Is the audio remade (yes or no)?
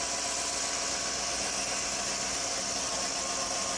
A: no